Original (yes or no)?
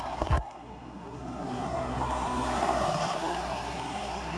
no